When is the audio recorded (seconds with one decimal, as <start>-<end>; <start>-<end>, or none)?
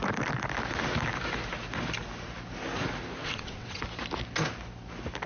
0.0-3.2; 3.8-5.3